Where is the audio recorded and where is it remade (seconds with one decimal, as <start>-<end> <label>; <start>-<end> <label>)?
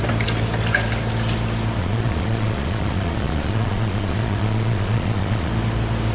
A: 0.0-1.8 recorded; 1.8-5.5 remade; 5.5-6.1 recorded